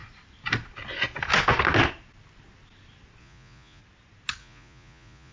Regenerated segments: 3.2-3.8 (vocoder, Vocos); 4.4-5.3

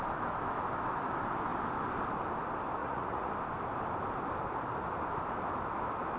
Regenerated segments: 2.8-3.3 (vocoder, Vocos)

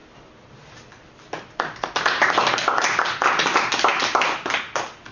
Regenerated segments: none